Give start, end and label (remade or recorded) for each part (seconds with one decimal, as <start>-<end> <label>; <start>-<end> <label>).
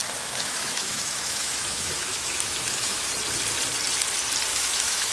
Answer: 0.0-3.1 remade; 3.1-4.5 recorded; 4.5-5.1 remade